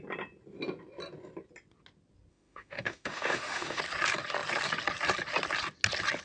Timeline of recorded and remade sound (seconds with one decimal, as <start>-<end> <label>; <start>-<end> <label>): 0.0-2.3 recorded; 2.3-3.8 remade; 3.8-6.2 recorded